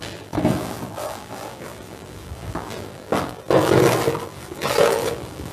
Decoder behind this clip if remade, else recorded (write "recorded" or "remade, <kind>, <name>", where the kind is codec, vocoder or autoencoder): remade, vocoder, BigVGAN v2